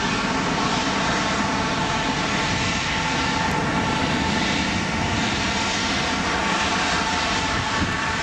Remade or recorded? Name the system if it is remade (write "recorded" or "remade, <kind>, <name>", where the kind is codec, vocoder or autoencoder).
recorded